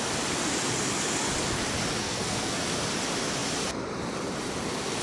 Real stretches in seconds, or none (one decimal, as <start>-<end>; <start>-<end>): 0.0-2.0; 2.6-5.0